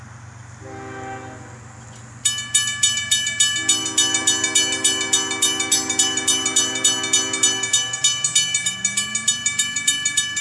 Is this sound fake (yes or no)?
no